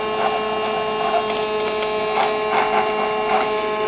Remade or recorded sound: recorded